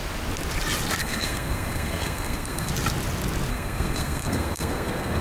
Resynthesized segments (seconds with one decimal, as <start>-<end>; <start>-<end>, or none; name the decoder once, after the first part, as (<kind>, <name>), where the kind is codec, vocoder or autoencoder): 1.0-2.7 (codec, SNAC); 3.5-5.2